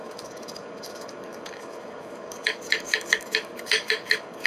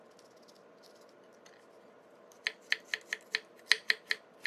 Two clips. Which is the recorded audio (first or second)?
second